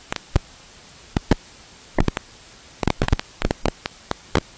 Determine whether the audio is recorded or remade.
remade